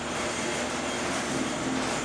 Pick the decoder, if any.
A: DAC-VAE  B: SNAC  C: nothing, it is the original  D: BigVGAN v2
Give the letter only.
C